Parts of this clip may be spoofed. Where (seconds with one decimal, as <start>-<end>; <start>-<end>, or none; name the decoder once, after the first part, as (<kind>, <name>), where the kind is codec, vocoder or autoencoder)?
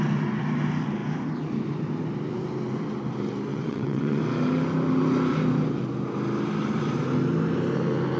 3.5-4.2 (vocoder, WaveNeXt)